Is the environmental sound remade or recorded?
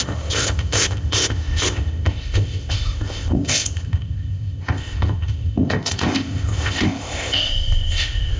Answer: remade